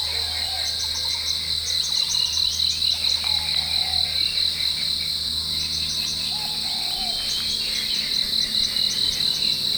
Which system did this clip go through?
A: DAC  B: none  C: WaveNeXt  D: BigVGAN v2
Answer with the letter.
B